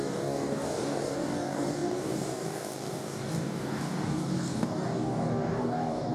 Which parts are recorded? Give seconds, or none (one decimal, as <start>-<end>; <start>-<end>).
none